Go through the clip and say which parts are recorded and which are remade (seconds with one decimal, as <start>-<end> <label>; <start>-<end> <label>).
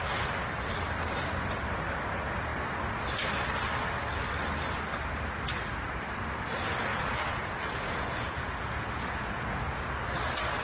0.0-6.9 recorded; 6.9-9.9 remade; 9.9-10.6 recorded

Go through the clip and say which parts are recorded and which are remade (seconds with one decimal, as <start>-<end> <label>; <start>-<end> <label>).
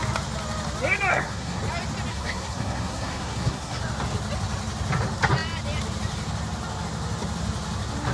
0.0-1.1 recorded; 1.1-1.6 remade; 1.6-2.1 recorded; 2.1-3.8 remade; 3.8-8.1 recorded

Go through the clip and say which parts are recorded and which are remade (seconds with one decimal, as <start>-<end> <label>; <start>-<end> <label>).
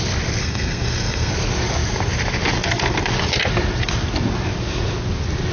0.0-0.4 recorded; 0.4-1.3 remade; 1.3-5.5 recorded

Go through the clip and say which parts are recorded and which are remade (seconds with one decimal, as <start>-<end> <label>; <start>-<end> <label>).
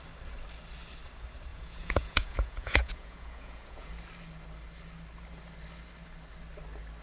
0.0-1.5 recorded; 1.5-3.9 remade; 3.9-7.0 recorded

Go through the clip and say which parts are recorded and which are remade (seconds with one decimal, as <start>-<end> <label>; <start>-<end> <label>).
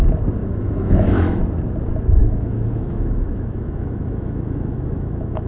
0.0-0.4 recorded; 0.4-1.4 remade; 1.4-2.2 recorded; 2.2-5.5 remade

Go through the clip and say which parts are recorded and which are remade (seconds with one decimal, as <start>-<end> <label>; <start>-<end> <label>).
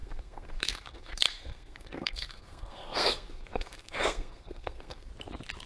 0.0-5.1 remade; 5.1-5.7 recorded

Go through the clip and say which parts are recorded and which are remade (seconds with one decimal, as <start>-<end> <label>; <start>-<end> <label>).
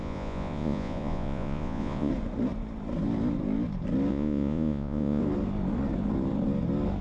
0.0-2.1 remade; 2.1-4.1 recorded; 4.1-5.2 remade; 5.2-7.0 recorded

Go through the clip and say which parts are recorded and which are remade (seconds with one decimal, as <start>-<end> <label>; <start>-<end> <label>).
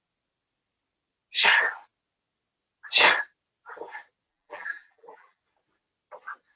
0.0-4.3 recorded; 4.3-5.4 remade; 5.4-6.6 recorded